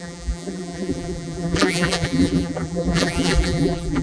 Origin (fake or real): fake